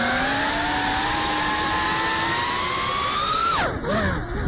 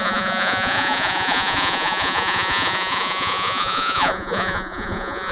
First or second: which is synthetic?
second